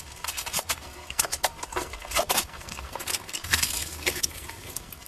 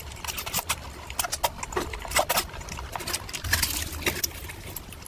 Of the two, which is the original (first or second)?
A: second